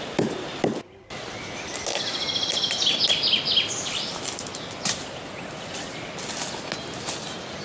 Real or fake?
real